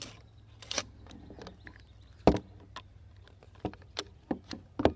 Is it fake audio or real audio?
real